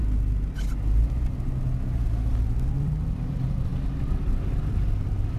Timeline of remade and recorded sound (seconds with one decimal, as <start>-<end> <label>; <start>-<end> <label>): 0.0-2.7 recorded; 2.7-3.7 remade; 3.7-4.7 recorded; 4.7-5.4 remade